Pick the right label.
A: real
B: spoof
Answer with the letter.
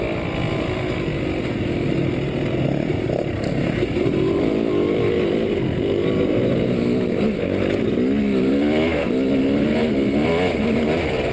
A